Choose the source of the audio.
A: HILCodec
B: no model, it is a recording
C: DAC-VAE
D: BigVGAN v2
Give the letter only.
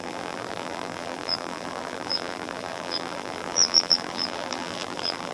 D